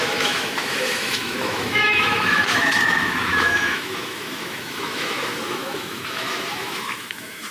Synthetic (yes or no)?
yes